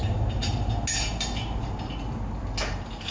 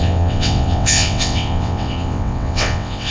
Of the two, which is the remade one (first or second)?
second